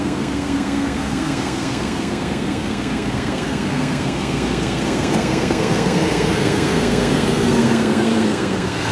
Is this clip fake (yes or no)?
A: yes